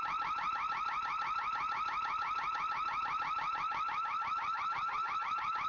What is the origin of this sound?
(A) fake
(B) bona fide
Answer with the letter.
B